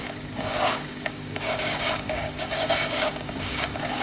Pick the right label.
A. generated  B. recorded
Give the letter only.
A